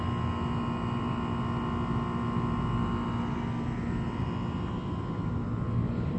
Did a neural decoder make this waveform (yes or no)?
no